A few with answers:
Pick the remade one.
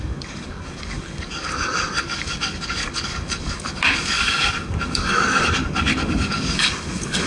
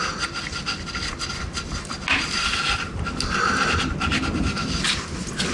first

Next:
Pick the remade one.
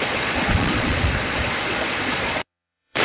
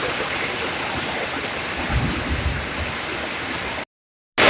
first